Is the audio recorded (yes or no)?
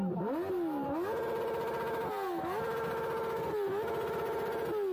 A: yes